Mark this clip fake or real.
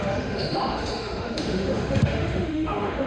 fake